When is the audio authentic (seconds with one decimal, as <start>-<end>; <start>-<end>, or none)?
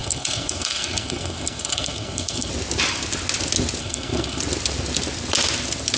2.5-3.8; 4.4-6.0